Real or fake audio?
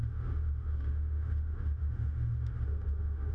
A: fake